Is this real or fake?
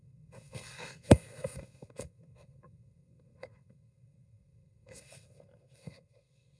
fake